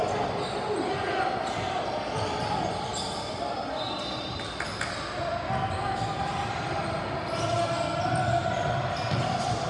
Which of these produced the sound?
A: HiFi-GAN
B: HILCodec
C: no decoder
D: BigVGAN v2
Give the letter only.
C